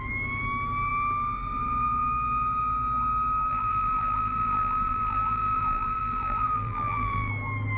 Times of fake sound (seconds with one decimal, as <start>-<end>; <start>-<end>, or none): 3.5-7.3